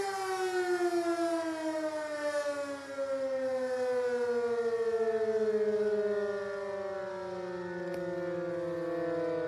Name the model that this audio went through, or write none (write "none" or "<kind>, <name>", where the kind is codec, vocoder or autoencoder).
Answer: none